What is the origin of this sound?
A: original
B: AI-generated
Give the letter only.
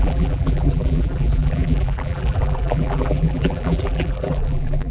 B